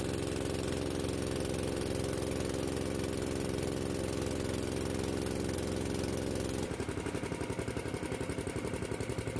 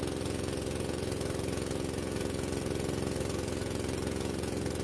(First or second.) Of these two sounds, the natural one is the first